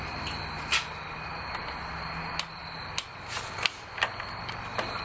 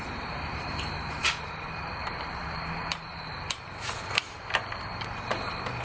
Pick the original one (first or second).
first